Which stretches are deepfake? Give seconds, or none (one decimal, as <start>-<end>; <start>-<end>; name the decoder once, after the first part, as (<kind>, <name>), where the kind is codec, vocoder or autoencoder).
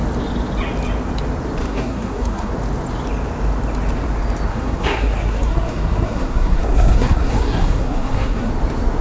1.6-2.5 (codec, SNAC); 4.5-8.5